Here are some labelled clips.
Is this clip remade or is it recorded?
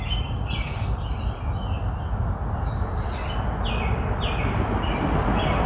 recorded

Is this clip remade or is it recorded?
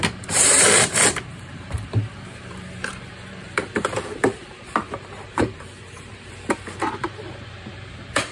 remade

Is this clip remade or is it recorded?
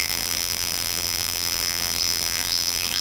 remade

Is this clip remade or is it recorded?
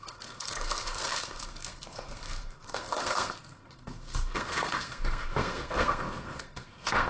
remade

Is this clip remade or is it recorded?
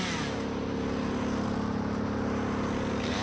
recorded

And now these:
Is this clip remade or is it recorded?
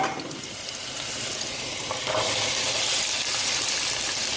recorded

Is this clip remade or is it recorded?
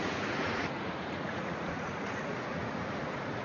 remade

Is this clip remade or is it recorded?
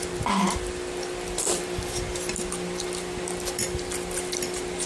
remade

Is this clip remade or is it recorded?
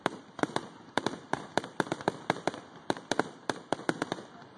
remade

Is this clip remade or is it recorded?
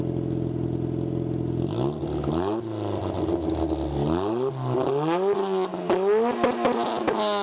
recorded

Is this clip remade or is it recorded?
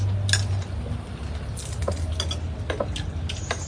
recorded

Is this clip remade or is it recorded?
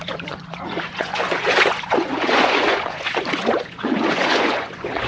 remade